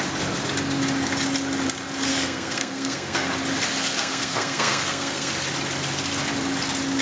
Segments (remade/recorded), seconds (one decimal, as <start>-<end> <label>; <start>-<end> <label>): 0.0-2.1 recorded; 2.1-3.3 remade; 3.3-3.8 recorded; 3.8-5.3 remade; 5.3-7.0 recorded